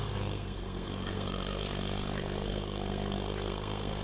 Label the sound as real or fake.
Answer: fake